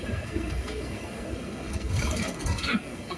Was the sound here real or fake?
fake